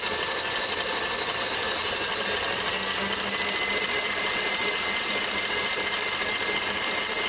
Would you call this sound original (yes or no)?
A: yes